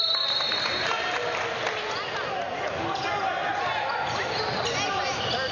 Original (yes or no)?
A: yes